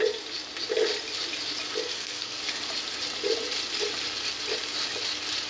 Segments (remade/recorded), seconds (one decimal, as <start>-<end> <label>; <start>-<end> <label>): 0.0-1.8 recorded; 1.8-2.4 remade; 2.4-5.5 recorded